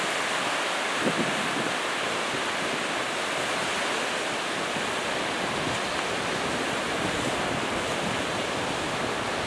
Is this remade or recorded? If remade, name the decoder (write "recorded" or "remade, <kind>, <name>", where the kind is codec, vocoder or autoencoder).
recorded